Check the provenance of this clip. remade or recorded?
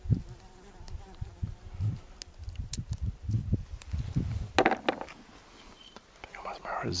recorded